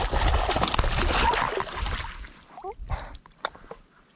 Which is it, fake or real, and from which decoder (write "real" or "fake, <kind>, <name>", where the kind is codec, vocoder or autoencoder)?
real